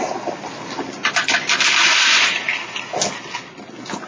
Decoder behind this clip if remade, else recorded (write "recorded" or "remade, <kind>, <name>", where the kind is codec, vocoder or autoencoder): recorded